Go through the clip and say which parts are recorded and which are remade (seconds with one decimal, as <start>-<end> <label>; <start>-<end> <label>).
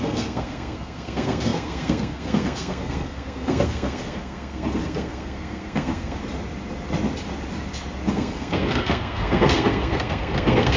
0.0-6.2 remade; 6.2-8.1 recorded; 8.1-10.8 remade